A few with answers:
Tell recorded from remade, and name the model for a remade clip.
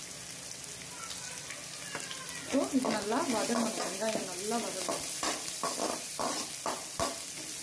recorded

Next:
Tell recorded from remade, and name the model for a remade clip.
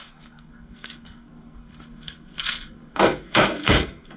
remade, codec, SNAC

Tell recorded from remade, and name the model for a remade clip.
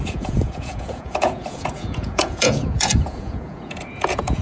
remade, vocoder, Vocos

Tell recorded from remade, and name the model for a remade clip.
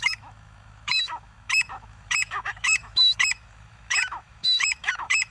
remade, autoencoder, DAC-VAE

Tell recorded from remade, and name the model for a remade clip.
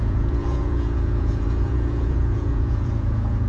remade, vocoder, Vocos